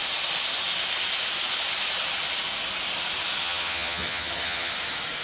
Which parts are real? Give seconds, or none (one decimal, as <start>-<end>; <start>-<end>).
0.0-3.4; 4.7-5.2

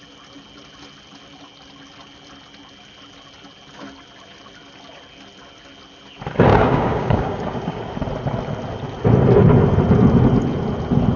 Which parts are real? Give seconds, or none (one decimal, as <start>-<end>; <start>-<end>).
0.0-6.5; 7.8-11.2